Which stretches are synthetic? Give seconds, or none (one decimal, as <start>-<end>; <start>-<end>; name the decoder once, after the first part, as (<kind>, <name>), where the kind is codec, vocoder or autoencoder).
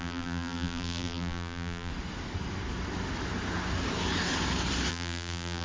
0.0-1.9 (vocoder, BigVGAN v2); 4.9-5.6